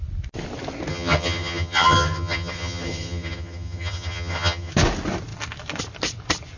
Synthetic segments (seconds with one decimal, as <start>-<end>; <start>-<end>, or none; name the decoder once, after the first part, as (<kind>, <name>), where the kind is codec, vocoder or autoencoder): 0.9-4.7 (vocoder, HiFi-GAN)